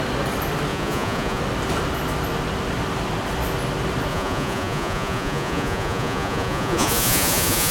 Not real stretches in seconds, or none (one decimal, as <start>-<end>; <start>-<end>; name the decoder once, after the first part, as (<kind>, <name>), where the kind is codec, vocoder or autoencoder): 0.7-1.4 (vocoder, Vocos); 4.1-7.7